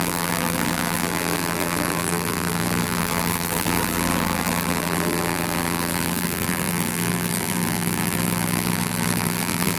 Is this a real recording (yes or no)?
no